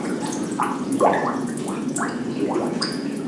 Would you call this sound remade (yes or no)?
yes